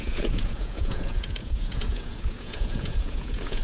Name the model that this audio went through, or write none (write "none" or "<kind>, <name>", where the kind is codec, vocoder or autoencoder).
vocoder, Vocos